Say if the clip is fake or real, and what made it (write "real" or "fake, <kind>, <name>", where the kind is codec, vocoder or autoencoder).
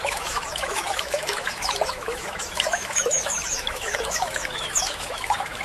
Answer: fake, autoencoder, DAC-VAE